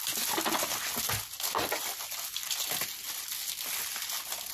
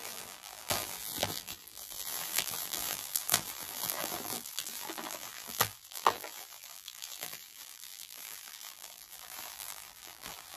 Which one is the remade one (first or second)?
second